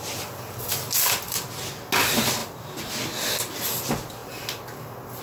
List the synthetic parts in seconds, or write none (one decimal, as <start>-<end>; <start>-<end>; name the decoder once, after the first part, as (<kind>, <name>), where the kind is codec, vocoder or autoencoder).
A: none